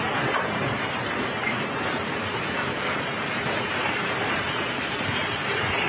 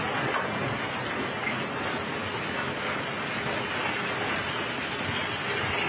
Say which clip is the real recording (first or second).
second